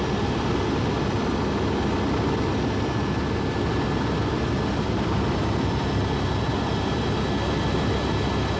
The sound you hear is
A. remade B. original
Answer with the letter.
B